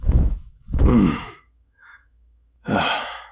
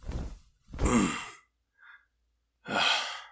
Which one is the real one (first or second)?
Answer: second